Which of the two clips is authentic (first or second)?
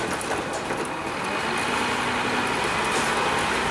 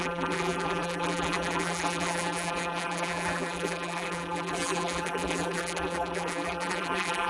first